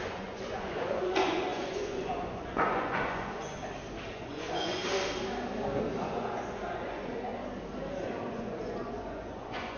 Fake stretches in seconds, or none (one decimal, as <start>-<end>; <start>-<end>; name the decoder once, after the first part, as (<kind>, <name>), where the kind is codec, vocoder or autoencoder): 0.0-3.6 (vocoder, Vocos); 4.1-4.8; 6.0-7.3; 8.3-9.8